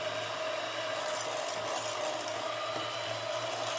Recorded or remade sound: recorded